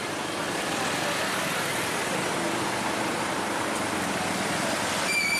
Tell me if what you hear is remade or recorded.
recorded